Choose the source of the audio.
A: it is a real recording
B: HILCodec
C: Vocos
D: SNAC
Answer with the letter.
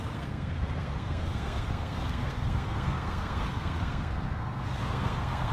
D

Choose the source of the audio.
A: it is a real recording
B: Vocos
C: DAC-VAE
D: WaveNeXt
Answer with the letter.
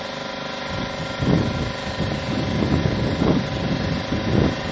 A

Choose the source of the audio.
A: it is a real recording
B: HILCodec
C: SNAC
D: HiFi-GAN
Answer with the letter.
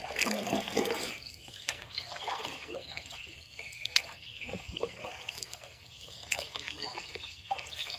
C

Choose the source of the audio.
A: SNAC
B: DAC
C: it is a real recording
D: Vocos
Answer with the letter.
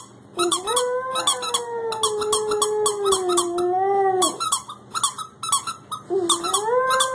C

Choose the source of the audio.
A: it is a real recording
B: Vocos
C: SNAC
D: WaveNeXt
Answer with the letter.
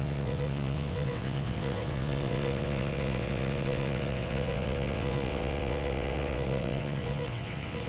D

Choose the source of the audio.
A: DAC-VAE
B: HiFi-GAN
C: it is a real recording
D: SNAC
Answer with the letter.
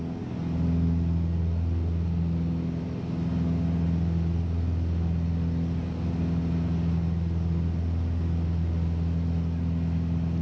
C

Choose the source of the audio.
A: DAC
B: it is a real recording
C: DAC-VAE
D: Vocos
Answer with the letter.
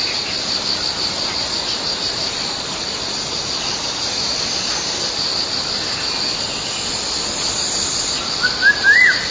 B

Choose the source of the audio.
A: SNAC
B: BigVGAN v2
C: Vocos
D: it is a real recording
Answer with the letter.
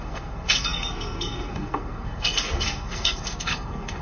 A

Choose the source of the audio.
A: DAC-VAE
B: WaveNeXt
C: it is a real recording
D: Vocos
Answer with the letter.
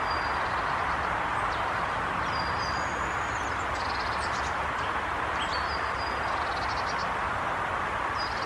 C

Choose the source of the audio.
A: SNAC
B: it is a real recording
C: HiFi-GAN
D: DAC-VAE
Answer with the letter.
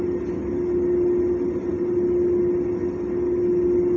B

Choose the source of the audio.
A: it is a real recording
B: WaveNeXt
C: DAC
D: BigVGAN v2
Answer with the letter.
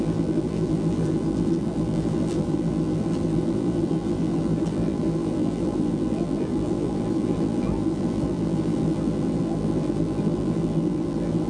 D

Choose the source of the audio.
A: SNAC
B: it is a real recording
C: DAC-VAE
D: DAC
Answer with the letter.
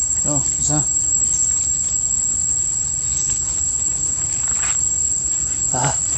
B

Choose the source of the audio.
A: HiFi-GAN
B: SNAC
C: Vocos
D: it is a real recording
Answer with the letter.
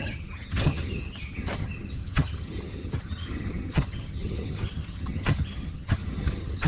A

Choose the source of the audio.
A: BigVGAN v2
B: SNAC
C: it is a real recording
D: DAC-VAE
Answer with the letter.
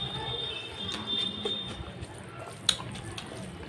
C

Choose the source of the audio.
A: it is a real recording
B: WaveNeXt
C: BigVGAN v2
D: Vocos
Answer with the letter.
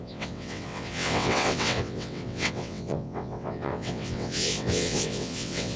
B